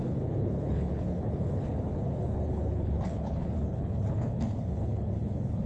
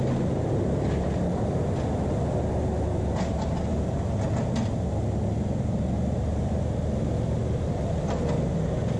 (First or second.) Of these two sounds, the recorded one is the second